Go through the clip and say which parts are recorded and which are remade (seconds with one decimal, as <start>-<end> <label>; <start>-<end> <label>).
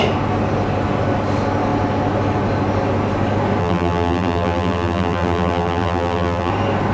0.0-3.6 recorded; 3.6-6.5 remade; 6.5-6.9 recorded